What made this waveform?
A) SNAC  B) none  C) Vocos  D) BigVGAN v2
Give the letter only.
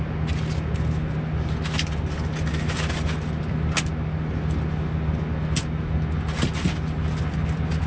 B